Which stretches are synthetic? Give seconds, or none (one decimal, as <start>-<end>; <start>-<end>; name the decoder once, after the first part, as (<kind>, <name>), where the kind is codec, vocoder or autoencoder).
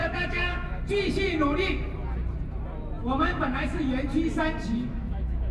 0.0-0.7 (autoencoder, DAC-VAE); 3.0-3.8; 4.9-5.5